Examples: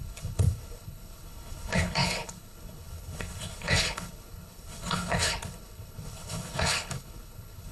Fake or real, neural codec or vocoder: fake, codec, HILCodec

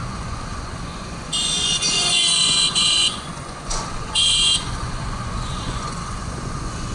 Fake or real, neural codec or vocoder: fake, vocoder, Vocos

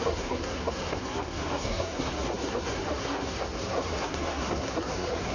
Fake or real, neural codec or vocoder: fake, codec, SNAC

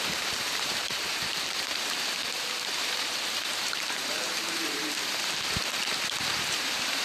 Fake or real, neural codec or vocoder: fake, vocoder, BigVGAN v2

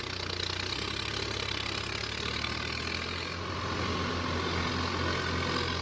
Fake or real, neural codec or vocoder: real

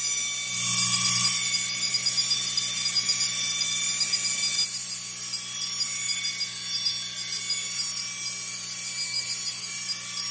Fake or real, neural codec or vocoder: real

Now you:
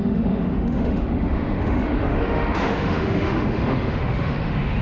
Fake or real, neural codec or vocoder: fake, autoencoder, DAC-VAE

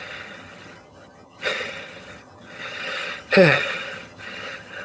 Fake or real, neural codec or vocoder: fake, vocoder, HiFi-GAN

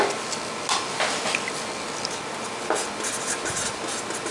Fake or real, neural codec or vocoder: real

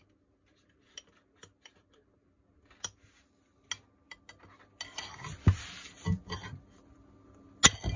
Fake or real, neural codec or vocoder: real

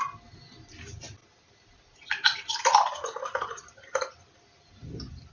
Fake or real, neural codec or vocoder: real